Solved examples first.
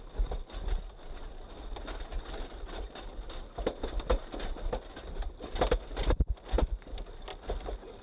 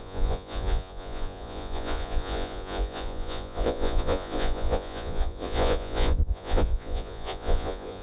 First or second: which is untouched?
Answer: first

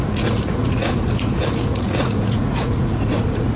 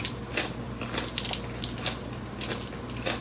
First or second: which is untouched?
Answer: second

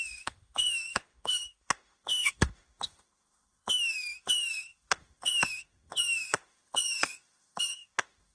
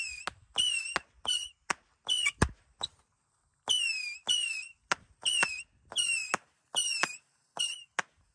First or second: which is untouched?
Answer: second